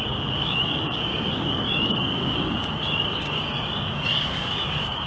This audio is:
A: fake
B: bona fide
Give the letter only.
A